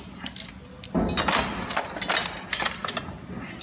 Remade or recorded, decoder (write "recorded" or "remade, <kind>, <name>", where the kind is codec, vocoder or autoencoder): recorded